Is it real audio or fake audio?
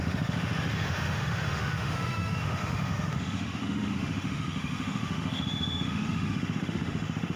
fake